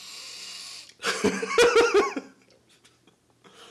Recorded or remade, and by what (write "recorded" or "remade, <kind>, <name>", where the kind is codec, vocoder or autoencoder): recorded